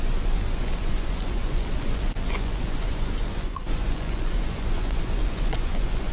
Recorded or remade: remade